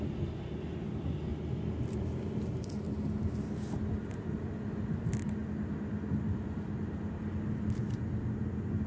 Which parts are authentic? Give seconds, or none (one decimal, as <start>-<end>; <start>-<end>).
0.0-8.9